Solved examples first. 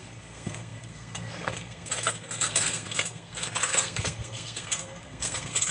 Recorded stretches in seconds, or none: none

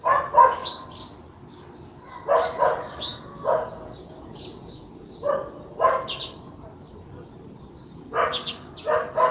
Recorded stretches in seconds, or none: 0.0-3.1; 4.9-9.3

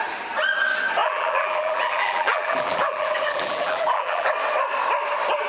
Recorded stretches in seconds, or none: 0.0-1.0; 4.3-5.5